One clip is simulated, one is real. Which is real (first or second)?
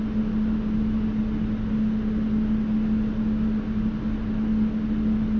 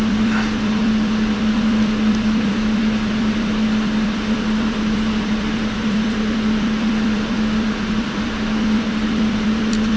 first